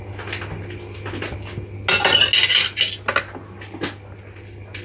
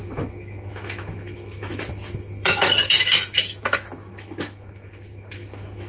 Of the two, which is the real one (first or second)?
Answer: first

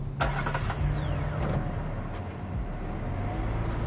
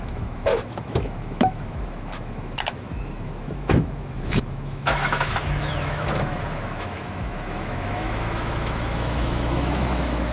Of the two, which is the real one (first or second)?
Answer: first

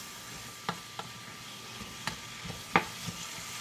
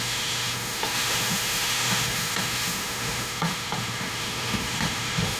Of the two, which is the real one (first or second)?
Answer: first